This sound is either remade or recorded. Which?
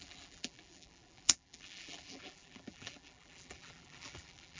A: remade